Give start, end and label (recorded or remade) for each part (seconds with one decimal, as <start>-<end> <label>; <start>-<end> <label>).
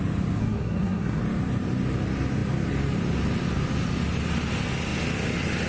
0.0-0.4 recorded; 0.4-1.2 remade; 1.2-5.7 recorded